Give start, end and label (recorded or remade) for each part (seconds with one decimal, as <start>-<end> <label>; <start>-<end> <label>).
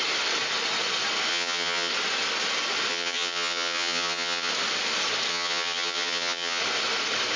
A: 0.0-1.3 recorded; 1.3-1.9 remade; 1.9-2.9 recorded; 2.9-4.5 remade; 4.5-5.3 recorded; 5.3-6.6 remade; 6.6-7.4 recorded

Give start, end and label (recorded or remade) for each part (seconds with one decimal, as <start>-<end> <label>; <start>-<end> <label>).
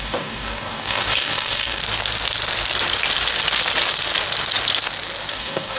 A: 0.0-1.8 remade; 1.8-5.3 recorded; 5.3-5.8 remade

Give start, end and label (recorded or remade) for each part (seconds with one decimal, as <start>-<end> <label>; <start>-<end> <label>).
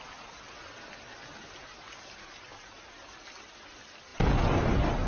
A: 0.0-5.1 recorded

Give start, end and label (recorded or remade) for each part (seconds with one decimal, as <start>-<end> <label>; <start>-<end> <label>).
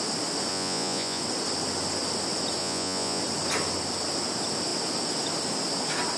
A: 0.0-0.5 recorded; 0.5-1.2 remade; 1.2-2.6 recorded; 2.6-3.2 remade; 3.2-6.2 recorded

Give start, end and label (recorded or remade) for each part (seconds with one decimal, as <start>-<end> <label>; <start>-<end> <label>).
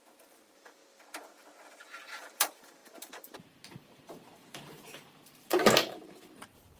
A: 0.0-0.8 remade; 0.8-1.7 recorded; 1.7-6.8 remade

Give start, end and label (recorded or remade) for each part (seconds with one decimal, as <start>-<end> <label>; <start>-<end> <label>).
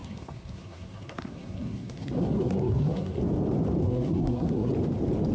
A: 0.0-3.2 remade; 3.2-3.8 recorded; 3.8-4.7 remade; 4.7-5.3 recorded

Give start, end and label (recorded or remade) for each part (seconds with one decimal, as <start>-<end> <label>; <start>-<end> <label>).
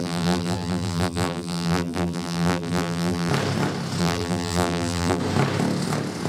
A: 0.0-3.3 remade; 3.3-4.0 recorded; 4.0-5.2 remade; 5.2-6.3 recorded